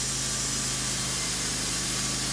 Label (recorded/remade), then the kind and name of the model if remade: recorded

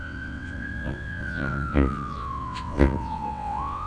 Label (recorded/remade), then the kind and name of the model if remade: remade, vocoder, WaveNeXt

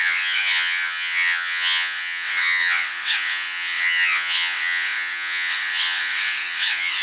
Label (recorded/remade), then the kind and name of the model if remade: remade, vocoder, WaveNeXt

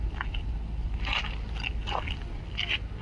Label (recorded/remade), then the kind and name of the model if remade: recorded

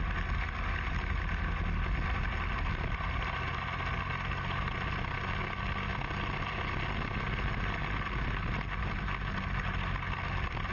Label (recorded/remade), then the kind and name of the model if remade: recorded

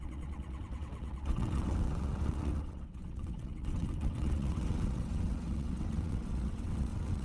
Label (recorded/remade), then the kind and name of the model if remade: remade, vocoder, WaveNeXt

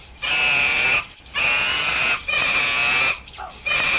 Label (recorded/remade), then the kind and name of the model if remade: recorded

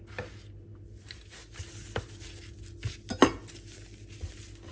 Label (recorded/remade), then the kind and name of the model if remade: recorded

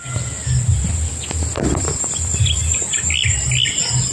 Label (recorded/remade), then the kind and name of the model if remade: recorded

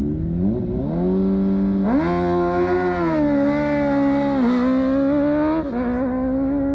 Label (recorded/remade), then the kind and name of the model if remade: recorded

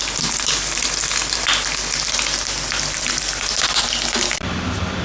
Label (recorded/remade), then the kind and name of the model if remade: recorded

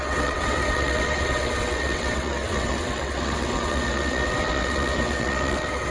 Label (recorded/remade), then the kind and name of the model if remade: remade, vocoder, WaveNeXt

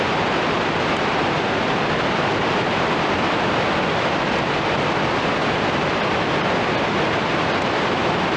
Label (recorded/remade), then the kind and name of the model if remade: recorded